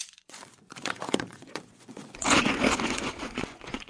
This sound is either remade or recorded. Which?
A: remade